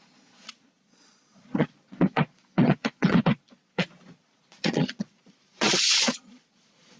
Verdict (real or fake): fake